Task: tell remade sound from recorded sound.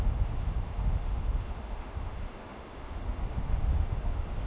remade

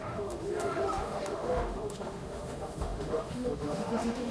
remade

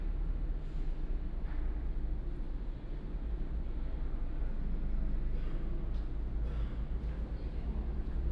recorded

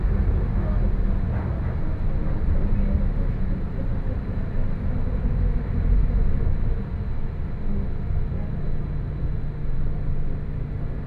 recorded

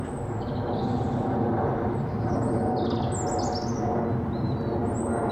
recorded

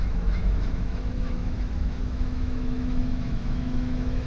remade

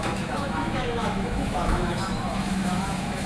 remade